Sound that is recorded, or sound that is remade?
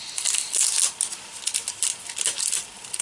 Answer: recorded